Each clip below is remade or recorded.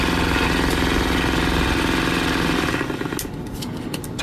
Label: recorded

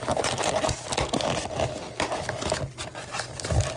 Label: recorded